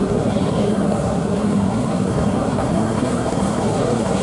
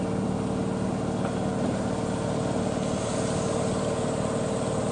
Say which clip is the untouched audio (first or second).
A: second